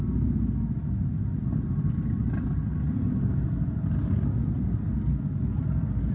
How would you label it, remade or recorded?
recorded